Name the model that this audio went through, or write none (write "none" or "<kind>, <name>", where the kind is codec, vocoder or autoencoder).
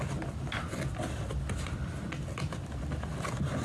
none